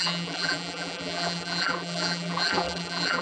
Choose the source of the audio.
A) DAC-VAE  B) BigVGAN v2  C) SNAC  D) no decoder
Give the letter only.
B